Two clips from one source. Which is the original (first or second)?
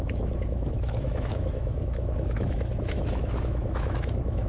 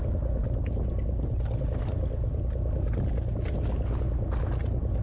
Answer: second